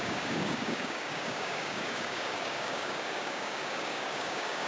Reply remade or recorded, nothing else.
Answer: remade